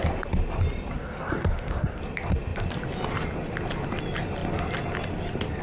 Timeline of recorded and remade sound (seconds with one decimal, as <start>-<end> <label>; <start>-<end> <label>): 0.0-0.9 recorded; 0.9-2.0 remade; 2.0-5.6 recorded